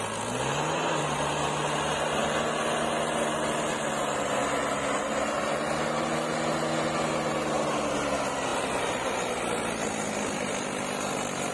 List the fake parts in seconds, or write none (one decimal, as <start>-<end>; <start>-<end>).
8.5-9.3